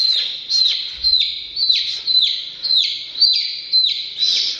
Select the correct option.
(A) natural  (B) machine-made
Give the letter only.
A